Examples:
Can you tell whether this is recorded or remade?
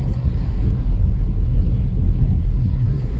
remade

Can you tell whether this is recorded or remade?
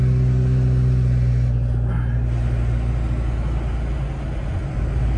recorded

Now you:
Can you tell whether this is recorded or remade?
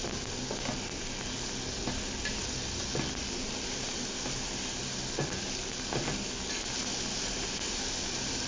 recorded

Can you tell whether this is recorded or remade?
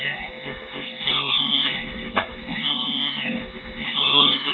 remade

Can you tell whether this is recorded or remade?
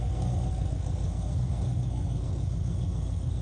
remade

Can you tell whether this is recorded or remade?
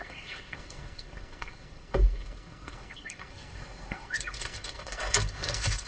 remade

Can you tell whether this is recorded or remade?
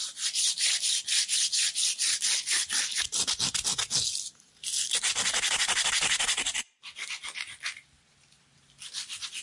recorded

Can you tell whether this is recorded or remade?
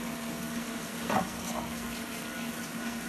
remade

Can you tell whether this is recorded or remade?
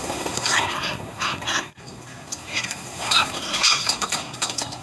remade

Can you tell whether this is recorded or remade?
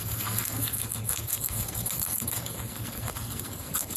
remade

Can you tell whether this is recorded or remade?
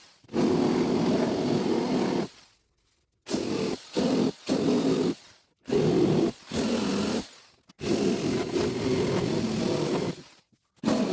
recorded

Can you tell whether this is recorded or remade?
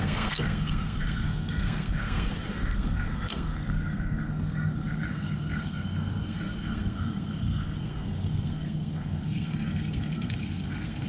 remade